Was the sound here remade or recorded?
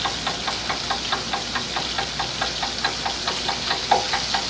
recorded